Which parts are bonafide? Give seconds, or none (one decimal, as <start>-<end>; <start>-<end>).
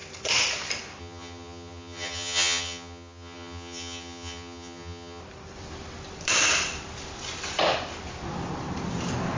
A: 0.0-1.0; 5.2-9.4